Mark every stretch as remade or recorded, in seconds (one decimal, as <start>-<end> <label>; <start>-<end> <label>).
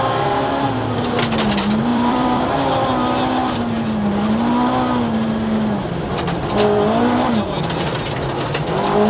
0.0-1.9 recorded; 1.9-2.6 remade; 2.6-9.1 recorded